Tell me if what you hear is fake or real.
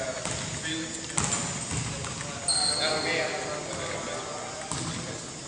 real